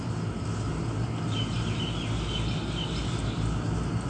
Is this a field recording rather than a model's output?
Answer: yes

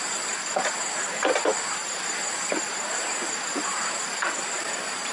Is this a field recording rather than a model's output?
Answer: no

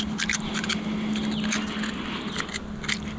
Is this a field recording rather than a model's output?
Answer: yes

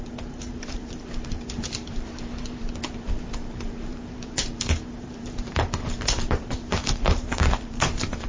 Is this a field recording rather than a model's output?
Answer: no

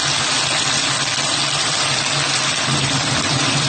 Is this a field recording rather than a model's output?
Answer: yes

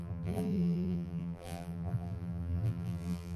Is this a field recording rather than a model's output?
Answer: no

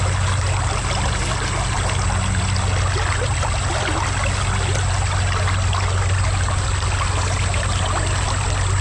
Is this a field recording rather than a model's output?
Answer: yes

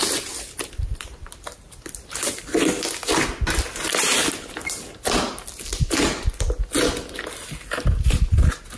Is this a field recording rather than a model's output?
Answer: yes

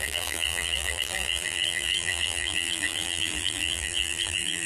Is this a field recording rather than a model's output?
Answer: no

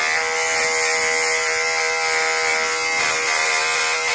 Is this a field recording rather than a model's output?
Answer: yes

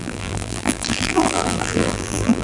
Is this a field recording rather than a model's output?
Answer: no